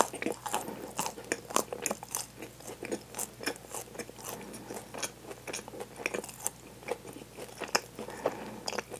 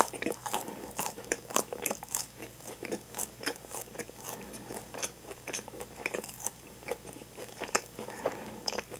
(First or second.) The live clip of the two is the first